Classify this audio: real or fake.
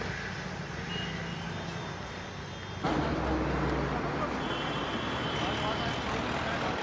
real